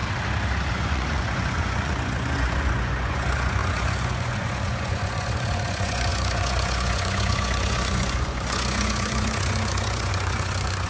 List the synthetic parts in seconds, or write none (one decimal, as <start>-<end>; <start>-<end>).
0.7-10.9